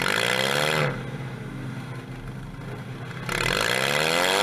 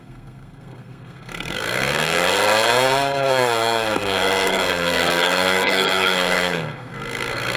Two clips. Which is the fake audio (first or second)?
second